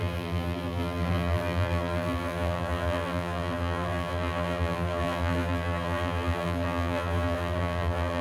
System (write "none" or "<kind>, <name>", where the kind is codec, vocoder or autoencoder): vocoder, BigVGAN v2